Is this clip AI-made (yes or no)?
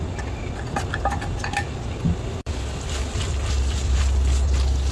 no